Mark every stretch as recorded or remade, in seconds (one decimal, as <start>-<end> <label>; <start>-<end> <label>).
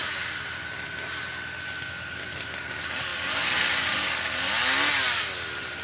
0.0-5.8 recorded